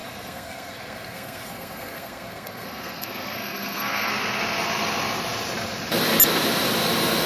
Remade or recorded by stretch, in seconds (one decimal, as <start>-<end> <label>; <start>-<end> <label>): 0.0-4.1 remade; 4.1-7.3 recorded